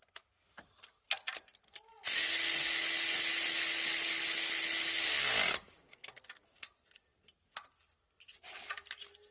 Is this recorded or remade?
recorded